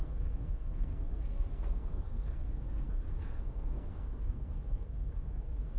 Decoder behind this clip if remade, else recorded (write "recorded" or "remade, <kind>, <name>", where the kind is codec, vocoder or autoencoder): remade, codec, SNAC